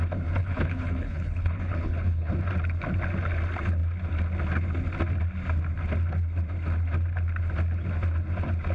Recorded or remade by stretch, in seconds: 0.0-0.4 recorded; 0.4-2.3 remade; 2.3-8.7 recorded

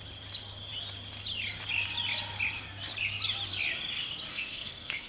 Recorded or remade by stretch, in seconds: 0.0-4.3 recorded; 4.3-5.1 remade

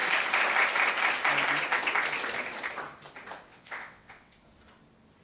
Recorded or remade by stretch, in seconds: 0.0-3.5 recorded; 3.5-4.3 remade; 4.3-5.2 recorded

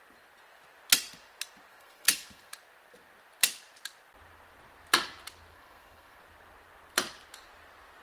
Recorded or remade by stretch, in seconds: 0.0-1.7 recorded; 1.7-2.5 remade; 2.5-5.5 recorded; 5.5-6.2 remade; 6.2-8.0 recorded

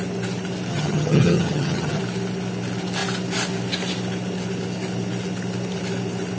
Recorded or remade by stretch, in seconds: 0.0-0.7 recorded; 0.7-2.0 remade; 2.0-6.4 recorded

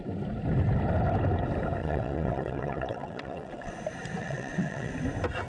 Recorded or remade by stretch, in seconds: 0.0-1.8 recorded; 1.8-3.7 remade; 3.7-4.2 recorded; 4.2-4.9 remade; 4.9-5.5 recorded